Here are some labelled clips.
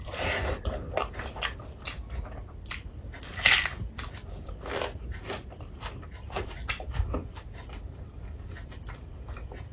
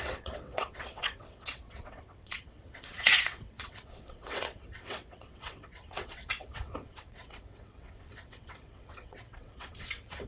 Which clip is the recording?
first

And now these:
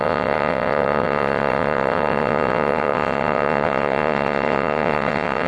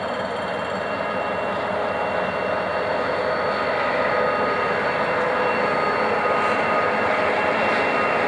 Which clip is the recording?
second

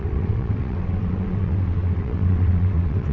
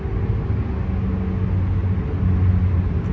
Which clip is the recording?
second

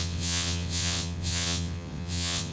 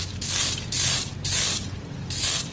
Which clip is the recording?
second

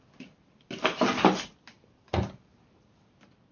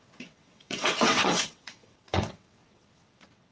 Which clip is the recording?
first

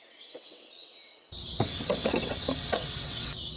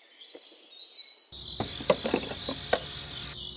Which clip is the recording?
second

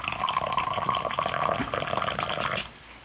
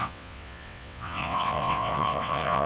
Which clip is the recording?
first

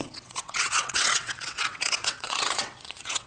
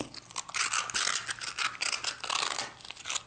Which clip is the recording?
second